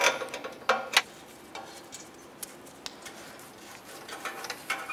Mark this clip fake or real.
real